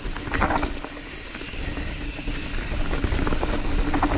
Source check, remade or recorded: recorded